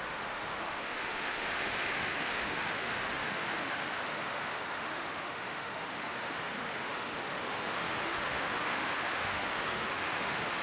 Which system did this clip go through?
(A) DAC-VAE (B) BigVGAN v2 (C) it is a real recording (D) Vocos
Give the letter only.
A